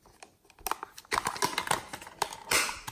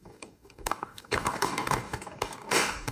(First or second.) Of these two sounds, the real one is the first